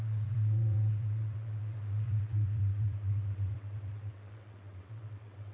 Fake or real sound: fake